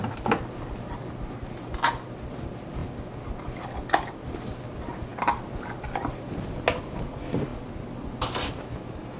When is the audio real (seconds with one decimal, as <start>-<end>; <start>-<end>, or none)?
0.0-9.2